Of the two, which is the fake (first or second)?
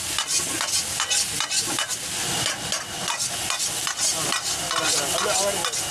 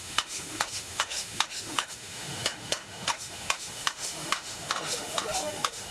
second